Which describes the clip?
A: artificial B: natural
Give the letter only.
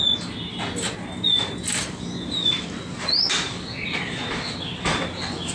B